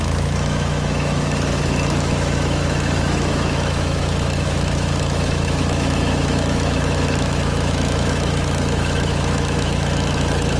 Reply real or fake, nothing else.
fake